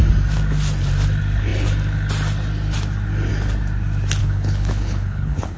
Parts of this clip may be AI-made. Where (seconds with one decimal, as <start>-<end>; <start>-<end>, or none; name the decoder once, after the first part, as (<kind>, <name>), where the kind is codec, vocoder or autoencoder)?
4.2-5.6 (codec, HILCodec)